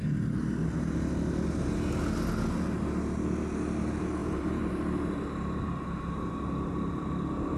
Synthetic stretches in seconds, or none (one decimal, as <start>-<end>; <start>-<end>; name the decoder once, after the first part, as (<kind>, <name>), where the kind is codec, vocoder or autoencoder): 4.2-6.3 (vocoder, BigVGAN v2)